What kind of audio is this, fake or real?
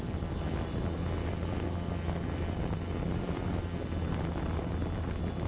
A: real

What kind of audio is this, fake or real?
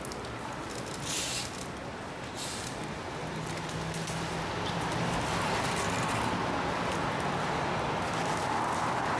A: real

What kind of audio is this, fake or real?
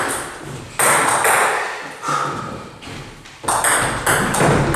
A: real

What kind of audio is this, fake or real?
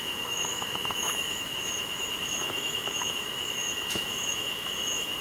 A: fake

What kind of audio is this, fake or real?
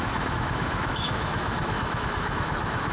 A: fake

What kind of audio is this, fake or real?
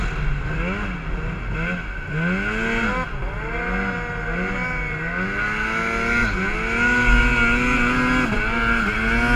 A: real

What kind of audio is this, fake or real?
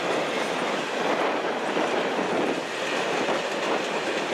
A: real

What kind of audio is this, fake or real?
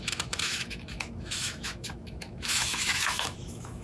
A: fake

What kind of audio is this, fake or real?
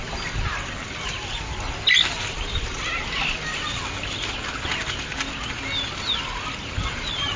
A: real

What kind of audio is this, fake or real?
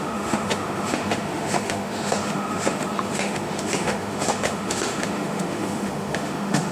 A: fake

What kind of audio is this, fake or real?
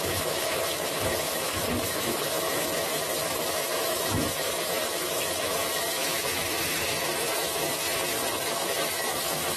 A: fake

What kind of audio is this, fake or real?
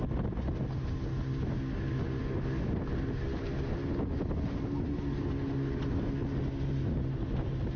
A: real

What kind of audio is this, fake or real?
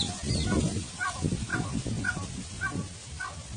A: real